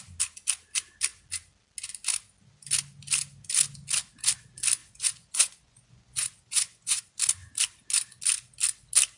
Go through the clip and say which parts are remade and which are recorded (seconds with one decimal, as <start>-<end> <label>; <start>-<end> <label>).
0.0-4.8 recorded; 4.8-7.0 remade; 7.0-9.2 recorded